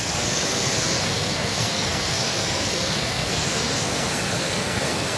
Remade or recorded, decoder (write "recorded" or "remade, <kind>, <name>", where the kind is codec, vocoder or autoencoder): remade, codec, SNAC